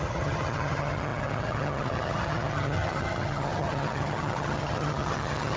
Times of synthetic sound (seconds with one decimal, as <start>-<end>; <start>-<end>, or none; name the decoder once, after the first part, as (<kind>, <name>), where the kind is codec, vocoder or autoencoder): 0.0-5.6 (vocoder, HiFi-GAN)